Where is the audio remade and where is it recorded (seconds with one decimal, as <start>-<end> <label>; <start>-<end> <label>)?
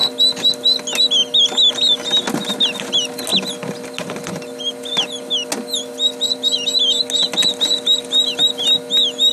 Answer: 0.0-9.3 recorded